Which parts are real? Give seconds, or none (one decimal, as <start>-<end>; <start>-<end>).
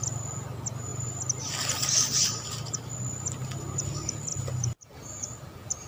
0.0-0.9; 3.8-4.3; 5.1-5.9